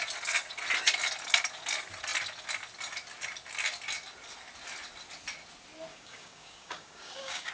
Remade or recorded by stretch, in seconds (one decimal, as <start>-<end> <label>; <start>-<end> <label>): 0.0-5.9 recorded; 5.9-7.5 remade